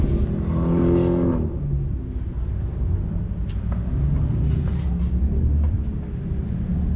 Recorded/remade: recorded